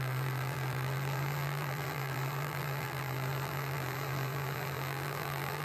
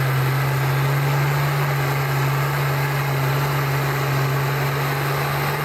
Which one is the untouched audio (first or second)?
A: second